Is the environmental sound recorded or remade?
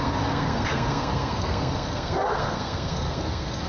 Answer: remade